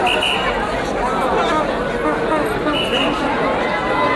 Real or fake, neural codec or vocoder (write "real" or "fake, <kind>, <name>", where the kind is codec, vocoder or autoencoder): real